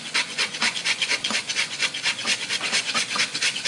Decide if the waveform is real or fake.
fake